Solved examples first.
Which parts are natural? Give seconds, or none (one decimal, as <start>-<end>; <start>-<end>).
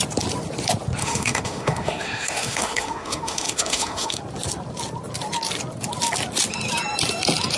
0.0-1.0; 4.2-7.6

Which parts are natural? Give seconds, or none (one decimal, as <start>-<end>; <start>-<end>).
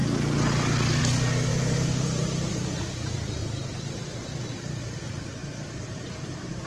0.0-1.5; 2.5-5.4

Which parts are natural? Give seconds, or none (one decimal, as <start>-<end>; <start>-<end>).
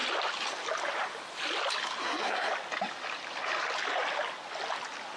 0.0-2.0; 2.5-5.2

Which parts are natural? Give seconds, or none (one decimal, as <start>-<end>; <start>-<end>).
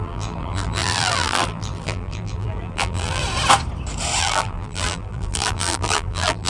3.2-4.2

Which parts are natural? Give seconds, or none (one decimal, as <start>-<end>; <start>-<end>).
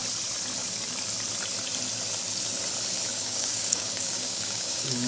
0.0-3.1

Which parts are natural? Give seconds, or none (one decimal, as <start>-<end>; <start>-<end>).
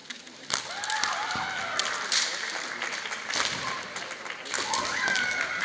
0.0-5.6